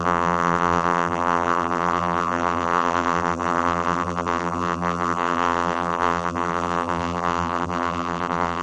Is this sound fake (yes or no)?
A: yes